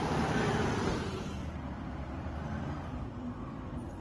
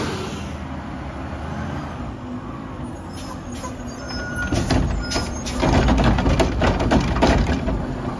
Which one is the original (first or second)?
second